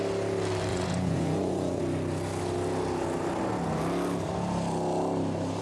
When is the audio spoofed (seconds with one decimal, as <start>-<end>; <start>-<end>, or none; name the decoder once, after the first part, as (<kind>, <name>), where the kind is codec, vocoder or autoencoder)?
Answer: 0.7-1.8 (vocoder, Vocos)